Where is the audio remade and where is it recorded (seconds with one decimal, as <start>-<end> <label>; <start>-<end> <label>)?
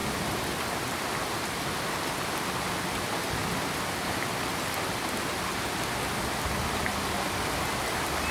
0.0-8.3 recorded